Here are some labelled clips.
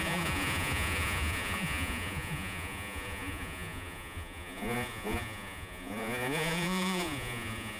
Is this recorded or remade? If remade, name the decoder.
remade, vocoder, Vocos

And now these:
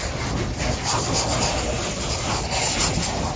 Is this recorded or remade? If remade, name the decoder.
recorded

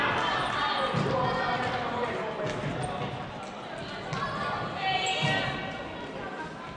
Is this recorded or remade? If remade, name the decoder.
recorded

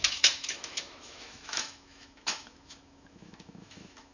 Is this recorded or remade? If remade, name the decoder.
remade, autoencoder, DAC-VAE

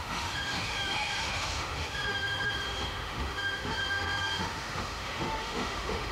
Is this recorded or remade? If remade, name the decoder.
remade, autoencoder, DAC-VAE